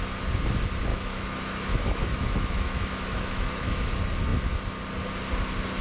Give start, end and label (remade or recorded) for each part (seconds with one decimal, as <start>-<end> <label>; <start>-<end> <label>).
0.0-0.9 recorded; 0.9-3.9 remade; 3.9-5.8 recorded